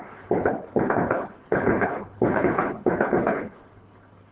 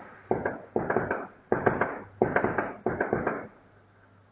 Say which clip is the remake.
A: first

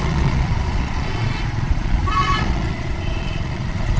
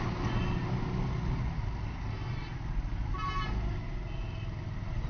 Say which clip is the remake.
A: first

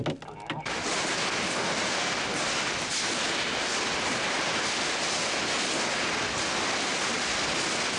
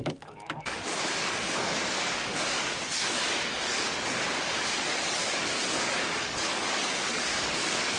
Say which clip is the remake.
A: second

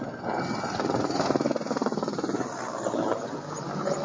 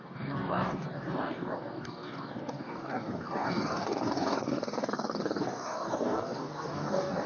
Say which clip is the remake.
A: second